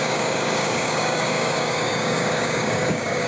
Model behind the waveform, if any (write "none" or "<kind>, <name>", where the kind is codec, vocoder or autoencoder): codec, DAC